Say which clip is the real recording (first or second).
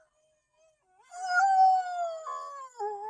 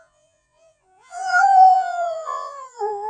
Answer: first